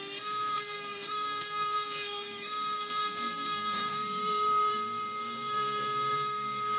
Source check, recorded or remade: remade